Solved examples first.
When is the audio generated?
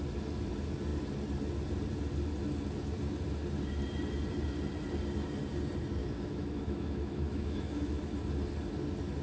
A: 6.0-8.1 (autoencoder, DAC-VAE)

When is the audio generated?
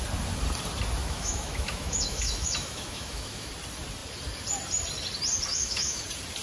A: 1.0-3.5 (autoencoder, DAC-VAE); 5.5-6.0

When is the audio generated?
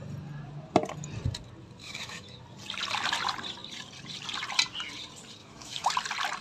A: 1.8-2.4 (autoencoder, DAC-VAE); 5.4-5.9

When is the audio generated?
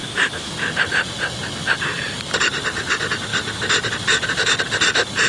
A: 0.0-0.5 (autoencoder, DAC-VAE)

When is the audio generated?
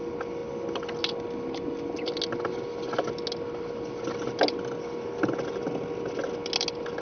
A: none